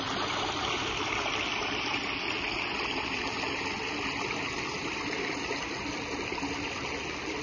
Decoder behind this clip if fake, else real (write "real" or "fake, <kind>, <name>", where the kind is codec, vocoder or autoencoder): real